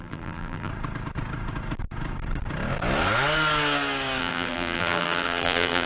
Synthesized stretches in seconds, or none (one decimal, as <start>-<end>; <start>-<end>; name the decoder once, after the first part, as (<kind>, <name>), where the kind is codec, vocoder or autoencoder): 0.0-0.7 (vocoder, BigVGAN v2); 4.2-5.9